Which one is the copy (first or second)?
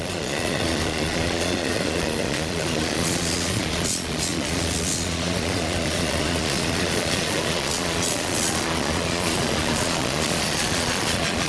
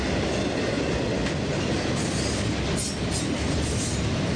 first